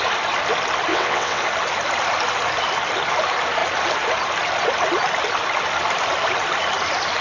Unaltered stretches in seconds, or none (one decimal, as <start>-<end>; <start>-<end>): 0.0-0.9; 1.4-7.2